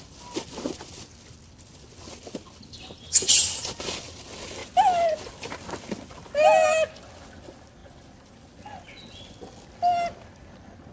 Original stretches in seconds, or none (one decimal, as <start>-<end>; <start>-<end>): 0.0-10.9